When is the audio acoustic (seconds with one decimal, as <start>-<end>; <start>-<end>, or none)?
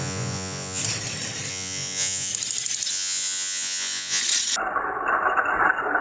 0.8-1.5; 2.3-2.9; 4.2-6.0